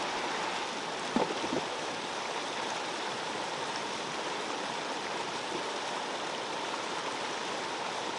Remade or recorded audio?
recorded